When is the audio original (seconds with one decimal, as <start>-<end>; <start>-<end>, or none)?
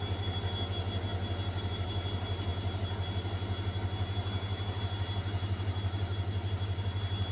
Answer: 0.0-1.1; 1.7-7.3